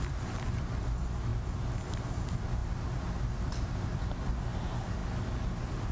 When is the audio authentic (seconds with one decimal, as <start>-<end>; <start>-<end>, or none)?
1.3-2.0